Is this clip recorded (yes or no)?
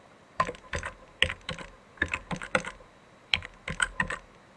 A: yes